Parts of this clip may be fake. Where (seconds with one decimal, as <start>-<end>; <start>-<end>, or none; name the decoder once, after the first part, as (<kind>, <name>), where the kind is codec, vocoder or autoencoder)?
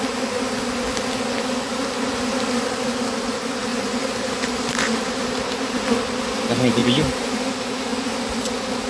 3.7-5.9 (vocoder, BigVGAN v2); 6.8-7.4